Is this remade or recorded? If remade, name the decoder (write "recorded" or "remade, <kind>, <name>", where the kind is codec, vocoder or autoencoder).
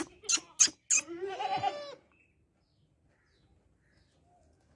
recorded